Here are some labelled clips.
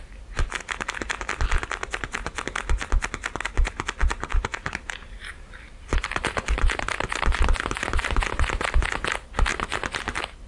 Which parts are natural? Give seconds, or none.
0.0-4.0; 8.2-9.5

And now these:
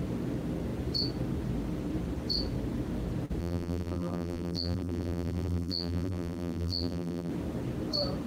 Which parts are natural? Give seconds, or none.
0.0-3.4; 7.3-8.3

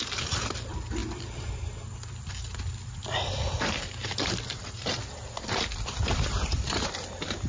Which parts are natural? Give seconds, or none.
none

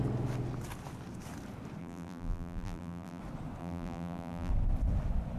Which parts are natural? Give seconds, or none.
0.0-1.8; 3.2-3.6; 4.5-5.4

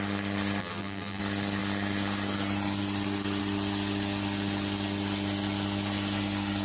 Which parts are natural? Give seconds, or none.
0.0-0.6; 1.2-6.6

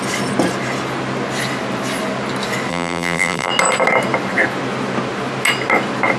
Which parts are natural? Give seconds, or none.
0.0-2.7; 3.5-6.2

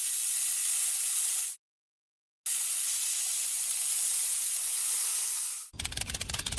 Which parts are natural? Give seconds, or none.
0.0-6.6